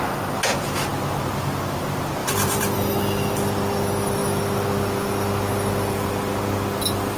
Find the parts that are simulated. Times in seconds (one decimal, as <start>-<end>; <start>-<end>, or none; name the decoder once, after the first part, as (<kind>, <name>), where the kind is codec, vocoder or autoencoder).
2.2-2.9 (vocoder, BigVGAN v2)